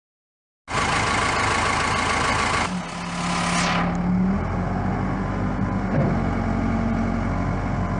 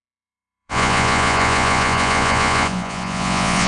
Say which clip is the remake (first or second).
second